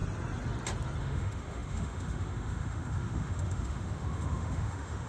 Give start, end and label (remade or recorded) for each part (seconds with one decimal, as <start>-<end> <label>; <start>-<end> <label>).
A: 0.0-1.0 recorded; 1.0-5.1 remade